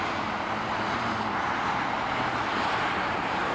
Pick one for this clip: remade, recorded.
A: recorded